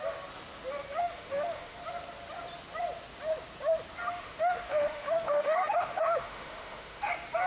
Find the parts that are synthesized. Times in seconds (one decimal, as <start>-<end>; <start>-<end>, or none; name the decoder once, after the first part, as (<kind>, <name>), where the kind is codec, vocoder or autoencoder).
1.0-1.8 (autoencoder, DAC-VAE); 4.1-7.1